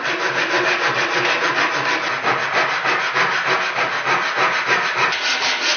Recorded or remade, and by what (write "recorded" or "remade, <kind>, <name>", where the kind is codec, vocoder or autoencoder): recorded